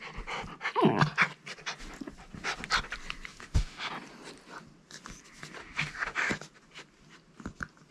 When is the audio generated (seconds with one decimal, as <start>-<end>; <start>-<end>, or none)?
3.3-3.9; 5.6-6.3